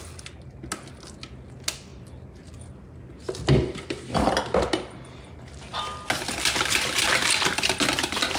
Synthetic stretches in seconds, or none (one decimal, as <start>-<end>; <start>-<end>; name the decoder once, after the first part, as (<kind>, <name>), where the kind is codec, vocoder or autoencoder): none